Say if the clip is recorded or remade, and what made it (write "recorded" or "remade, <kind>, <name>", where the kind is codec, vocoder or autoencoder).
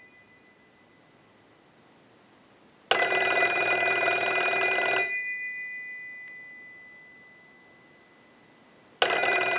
recorded